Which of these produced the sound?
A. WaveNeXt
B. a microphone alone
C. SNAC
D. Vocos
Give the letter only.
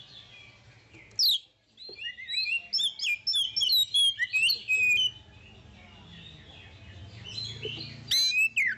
B